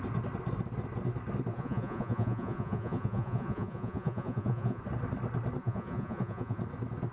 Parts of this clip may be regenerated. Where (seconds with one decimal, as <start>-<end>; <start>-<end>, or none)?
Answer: 1.5-4.8; 5.6-6.6